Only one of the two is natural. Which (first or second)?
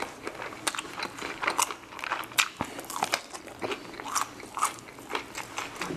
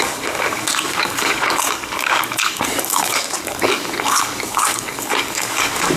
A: first